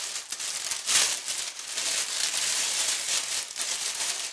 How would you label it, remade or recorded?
recorded